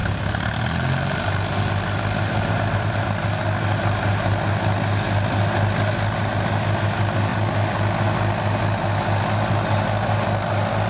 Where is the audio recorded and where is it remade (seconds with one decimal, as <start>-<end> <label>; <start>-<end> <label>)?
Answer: 0.0-10.9 recorded